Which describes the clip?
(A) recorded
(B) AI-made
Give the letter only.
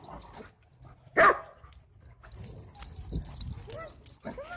A